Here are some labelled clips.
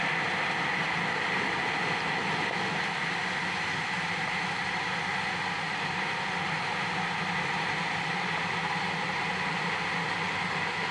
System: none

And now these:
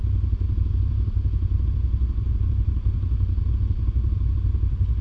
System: none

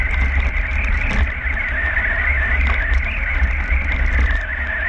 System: none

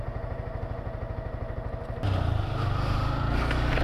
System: none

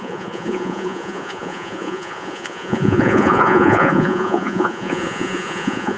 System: vocoder, Vocos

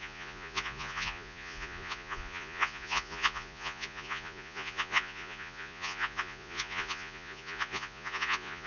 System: vocoder, Vocos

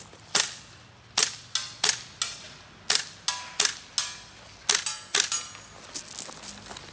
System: none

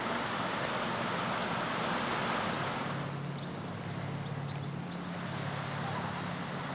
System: none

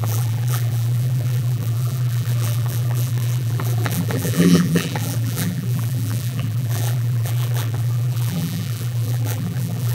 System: vocoder, BigVGAN v2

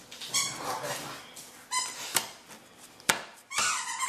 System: none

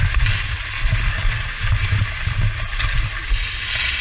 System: none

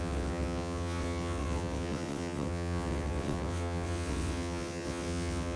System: vocoder, WaveNeXt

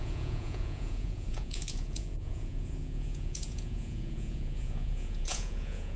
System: vocoder, Vocos